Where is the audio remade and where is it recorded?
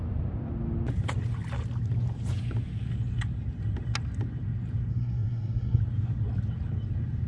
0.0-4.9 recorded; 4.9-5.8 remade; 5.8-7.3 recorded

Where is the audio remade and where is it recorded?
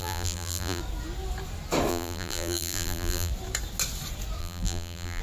0.0-0.8 remade; 0.8-1.9 recorded; 1.9-3.3 remade; 3.3-4.4 recorded; 4.4-5.2 remade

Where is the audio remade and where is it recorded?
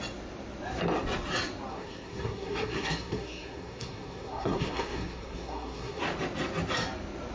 0.0-1.7 recorded; 1.7-6.0 remade; 6.0-7.3 recorded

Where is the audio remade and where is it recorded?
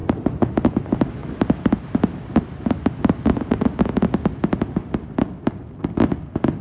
0.0-0.5 remade; 0.5-1.2 recorded; 1.2-4.1 remade; 4.1-4.8 recorded; 4.8-5.6 remade; 5.6-6.6 recorded